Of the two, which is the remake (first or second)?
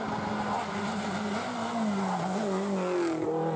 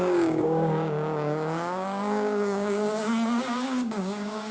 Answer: second